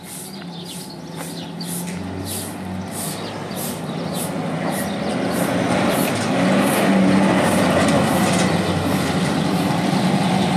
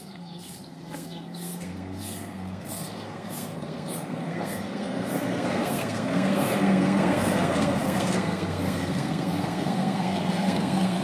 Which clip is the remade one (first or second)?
second